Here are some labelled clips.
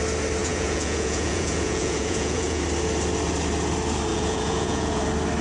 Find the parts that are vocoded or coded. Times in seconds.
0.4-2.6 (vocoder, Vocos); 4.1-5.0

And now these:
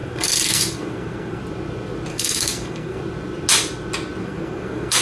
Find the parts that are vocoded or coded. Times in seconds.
0.0-1.4 (codec, SNAC); 2.1-3.0; 4.2-5.0

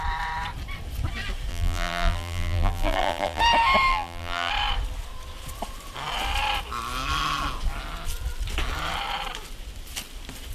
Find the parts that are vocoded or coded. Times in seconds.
1.5-3.4 (vocoder, BigVGAN v2); 3.9-4.5

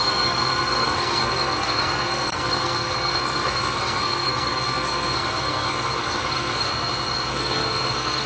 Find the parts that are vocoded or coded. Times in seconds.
0.0-6.7 (codec, SNAC); 7.3-8.3

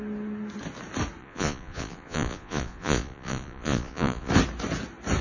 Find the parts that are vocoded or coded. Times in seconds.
1.2-4.3 (vocoder, Vocos)

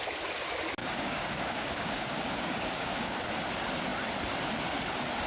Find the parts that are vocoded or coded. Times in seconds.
0.8-3.3 (codec, DAC)

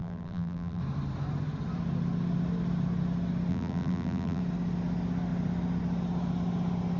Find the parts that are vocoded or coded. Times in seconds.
0.0-0.8 (vocoder, BigVGAN v2); 3.5-4.4

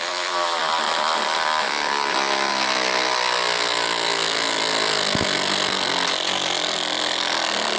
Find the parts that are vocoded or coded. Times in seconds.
none